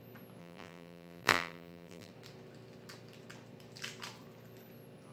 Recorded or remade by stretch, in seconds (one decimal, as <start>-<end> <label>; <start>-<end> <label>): 0.0-0.4 recorded; 0.4-2.1 remade; 2.1-5.1 recorded